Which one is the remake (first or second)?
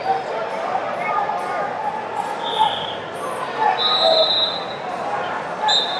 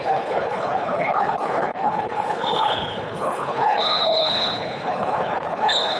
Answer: second